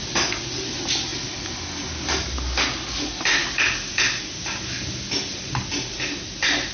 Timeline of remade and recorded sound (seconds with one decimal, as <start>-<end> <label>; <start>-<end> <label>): 0.0-6.7 recorded